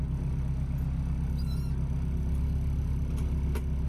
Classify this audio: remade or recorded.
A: recorded